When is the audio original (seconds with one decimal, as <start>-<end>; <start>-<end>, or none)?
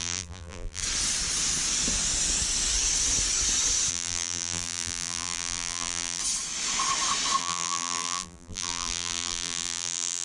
0.8-3.9; 6.2-7.4